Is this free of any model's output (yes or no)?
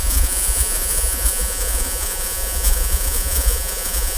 no